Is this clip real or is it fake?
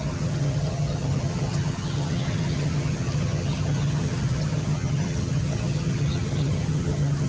fake